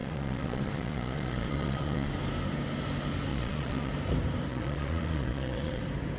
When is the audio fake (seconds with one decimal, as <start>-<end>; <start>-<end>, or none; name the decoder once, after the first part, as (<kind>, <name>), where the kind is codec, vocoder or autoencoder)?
0.0-2.1 (vocoder, Vocos); 3.3-3.9; 4.5-5.8